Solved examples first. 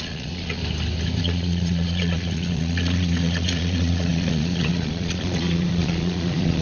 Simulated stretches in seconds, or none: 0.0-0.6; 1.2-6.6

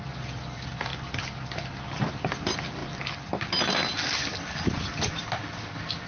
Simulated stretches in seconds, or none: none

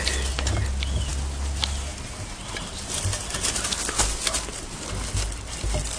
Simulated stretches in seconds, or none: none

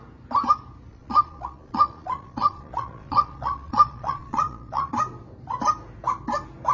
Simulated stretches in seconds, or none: 0.9-4.9